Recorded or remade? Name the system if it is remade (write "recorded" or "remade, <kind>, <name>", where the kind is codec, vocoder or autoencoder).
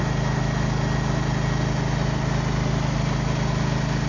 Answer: recorded